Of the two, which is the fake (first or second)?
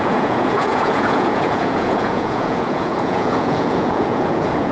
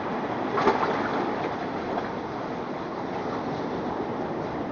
first